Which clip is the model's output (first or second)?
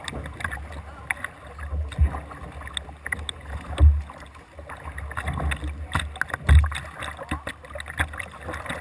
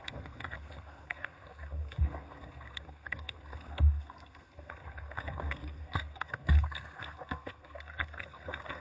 second